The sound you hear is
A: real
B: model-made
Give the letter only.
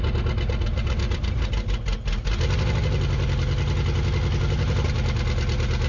A